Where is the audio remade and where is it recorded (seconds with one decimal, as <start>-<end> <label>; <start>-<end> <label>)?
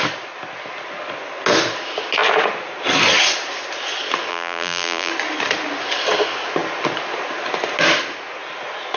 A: 0.0-4.3 recorded; 4.3-5.1 remade; 5.1-9.0 recorded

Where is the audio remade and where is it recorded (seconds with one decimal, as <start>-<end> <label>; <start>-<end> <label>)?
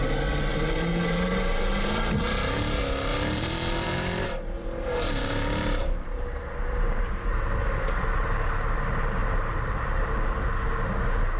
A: 0.0-0.5 recorded; 0.5-2.1 remade; 2.1-3.1 recorded; 3.1-7.3 remade; 7.3-9.2 recorded; 9.2-10.1 remade; 10.1-11.4 recorded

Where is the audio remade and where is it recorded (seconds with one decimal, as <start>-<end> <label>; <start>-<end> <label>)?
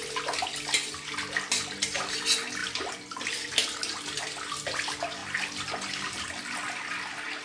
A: 0.0-7.4 recorded